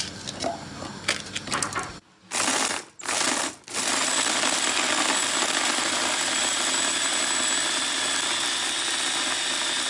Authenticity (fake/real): real